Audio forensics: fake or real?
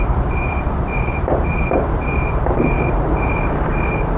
fake